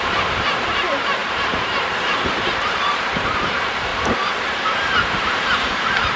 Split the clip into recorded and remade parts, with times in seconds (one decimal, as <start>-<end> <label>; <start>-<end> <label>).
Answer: 0.0-3.9 remade; 3.9-5.1 recorded; 5.1-6.2 remade